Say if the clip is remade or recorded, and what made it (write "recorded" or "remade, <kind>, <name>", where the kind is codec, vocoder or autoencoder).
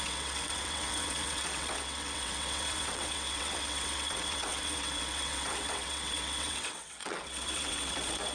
remade, vocoder, WaveNeXt